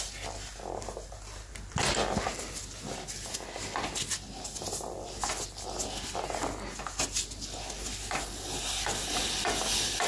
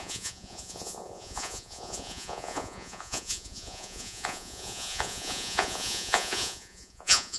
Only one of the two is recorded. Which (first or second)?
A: first